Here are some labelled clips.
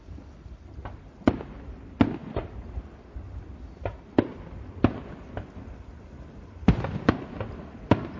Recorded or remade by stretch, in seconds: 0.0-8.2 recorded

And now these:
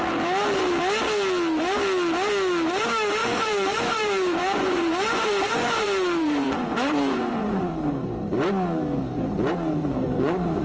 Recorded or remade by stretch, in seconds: 0.0-3.2 recorded; 3.2-7.7 remade; 7.7-9.8 recorded; 9.8-10.6 remade

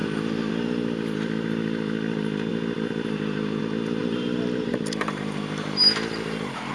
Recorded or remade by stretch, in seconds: 0.0-0.5 remade; 0.5-4.0 recorded; 4.0-6.7 remade

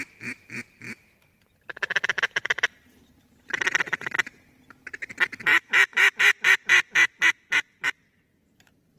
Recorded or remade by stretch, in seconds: 0.0-5.5 recorded; 5.5-6.1 remade; 6.1-9.0 recorded

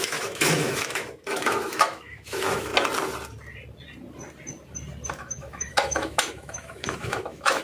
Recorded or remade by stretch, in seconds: 0.0-2.7 remade; 2.7-5.1 recorded; 5.1-7.6 remade

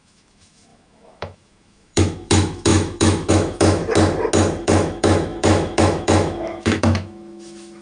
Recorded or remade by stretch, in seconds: 0.0-3.8 remade; 3.8-4.6 recorded; 4.6-7.8 remade

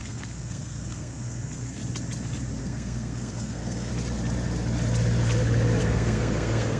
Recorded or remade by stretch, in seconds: 0.0-1.8 remade; 1.8-2.6 recorded; 2.6-3.9 remade; 3.9-5.8 recorded; 5.8-6.8 remade

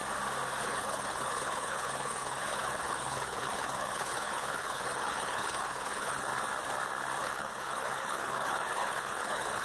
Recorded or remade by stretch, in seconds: 0.0-0.6 recorded; 0.6-6.3 remade; 6.3-7.2 recorded; 7.2-9.6 remade